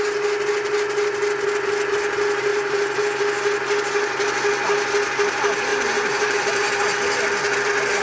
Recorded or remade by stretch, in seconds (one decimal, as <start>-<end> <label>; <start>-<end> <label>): 0.0-2.5 recorded; 2.5-3.2 remade; 3.2-5.7 recorded; 5.7-6.9 remade; 6.9-8.0 recorded